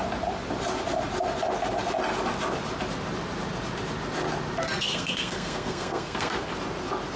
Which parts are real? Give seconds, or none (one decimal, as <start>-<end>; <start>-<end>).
0.0-4.6; 6.5-7.2